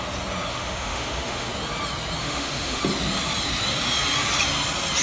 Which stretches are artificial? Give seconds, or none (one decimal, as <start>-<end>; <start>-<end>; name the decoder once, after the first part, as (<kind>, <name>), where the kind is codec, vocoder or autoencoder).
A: 0.5-1.5 (autoencoder, DAC-VAE); 2.2-2.8